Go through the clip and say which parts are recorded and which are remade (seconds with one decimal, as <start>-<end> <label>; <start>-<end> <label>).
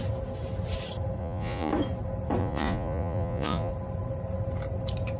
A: 0.0-1.2 recorded; 1.2-1.7 remade; 1.7-2.4 recorded; 2.4-3.7 remade; 3.7-5.2 recorded